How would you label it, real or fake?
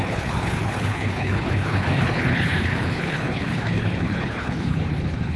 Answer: fake